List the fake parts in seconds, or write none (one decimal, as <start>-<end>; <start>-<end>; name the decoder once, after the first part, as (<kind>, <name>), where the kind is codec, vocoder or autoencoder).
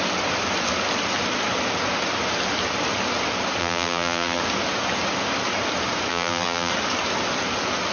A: 3.6-4.4 (vocoder, BigVGAN v2); 6.1-6.7